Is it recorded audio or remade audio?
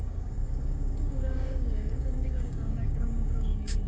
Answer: remade